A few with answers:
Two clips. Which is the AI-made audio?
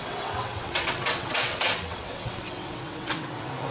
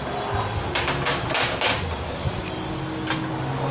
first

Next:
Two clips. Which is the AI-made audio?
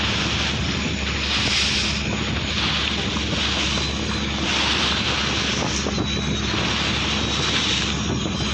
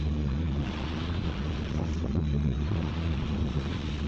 second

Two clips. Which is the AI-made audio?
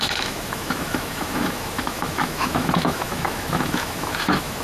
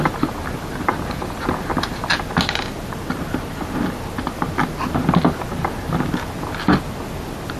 first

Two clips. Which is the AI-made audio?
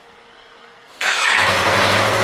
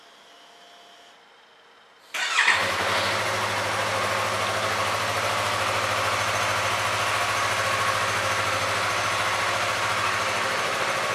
first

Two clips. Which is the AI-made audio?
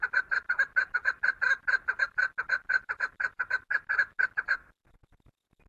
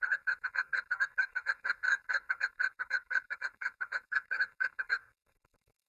second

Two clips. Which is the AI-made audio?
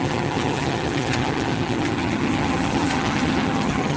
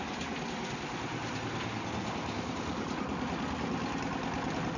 first